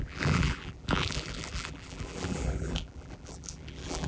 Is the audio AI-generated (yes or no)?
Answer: yes